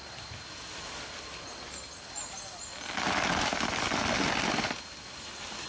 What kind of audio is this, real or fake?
real